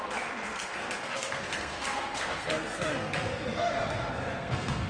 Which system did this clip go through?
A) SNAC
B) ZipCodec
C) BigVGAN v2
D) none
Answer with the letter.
A